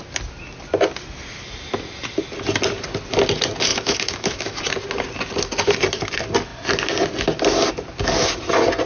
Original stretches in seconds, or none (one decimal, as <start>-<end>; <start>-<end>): 0.0-3.7; 4.6-8.9

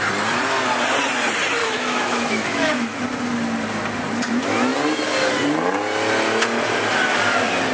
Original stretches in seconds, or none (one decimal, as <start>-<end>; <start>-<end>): 0.0-1.6; 3.0-7.7